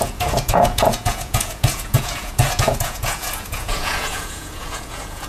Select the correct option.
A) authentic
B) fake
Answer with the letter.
B